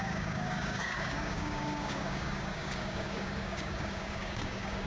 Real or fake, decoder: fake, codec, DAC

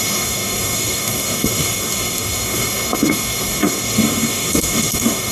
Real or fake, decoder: fake, codec, DAC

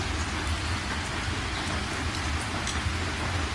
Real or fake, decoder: real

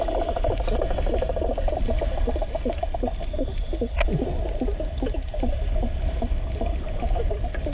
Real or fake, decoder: real